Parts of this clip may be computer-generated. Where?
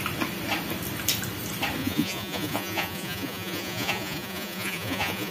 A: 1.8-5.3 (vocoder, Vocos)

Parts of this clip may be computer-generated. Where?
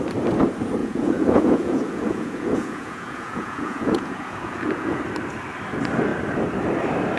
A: 0.8-5.0 (vocoder, Vocos)